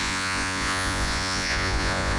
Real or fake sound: fake